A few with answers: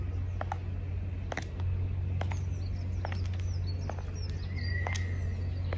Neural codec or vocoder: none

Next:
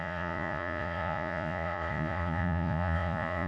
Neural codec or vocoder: vocoder, Vocos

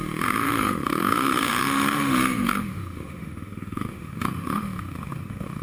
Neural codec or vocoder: autoencoder, DAC-VAE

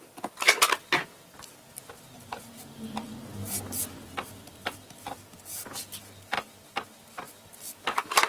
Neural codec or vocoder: none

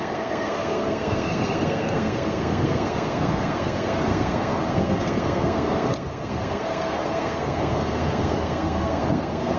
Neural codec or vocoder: codec, SNAC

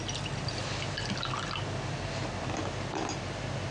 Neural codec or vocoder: none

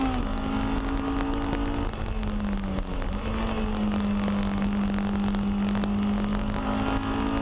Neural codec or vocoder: none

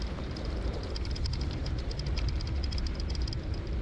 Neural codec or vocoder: vocoder, BigVGAN v2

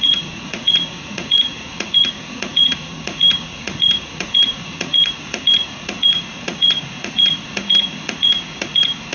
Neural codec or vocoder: vocoder, Vocos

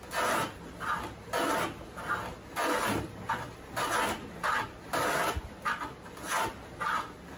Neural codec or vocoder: none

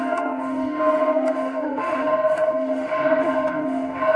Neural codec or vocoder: autoencoder, DAC-VAE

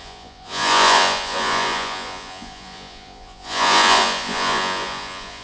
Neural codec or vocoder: vocoder, Vocos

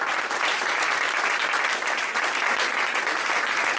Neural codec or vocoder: none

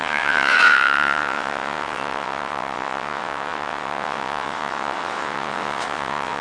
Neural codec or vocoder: vocoder, WaveNeXt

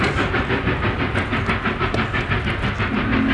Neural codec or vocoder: none